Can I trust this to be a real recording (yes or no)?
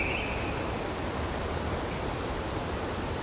yes